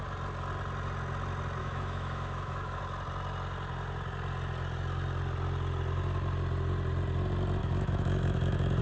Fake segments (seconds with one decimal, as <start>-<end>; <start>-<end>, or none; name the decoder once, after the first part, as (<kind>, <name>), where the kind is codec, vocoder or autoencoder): 1.6-2.8 (autoencoder, DAC-VAE); 7.6-8.8